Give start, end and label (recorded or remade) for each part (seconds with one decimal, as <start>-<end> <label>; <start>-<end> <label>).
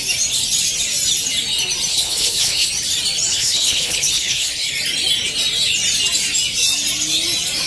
0.0-1.9 recorded; 1.9-2.7 remade; 2.7-3.3 recorded; 3.3-4.7 remade; 4.7-7.7 recorded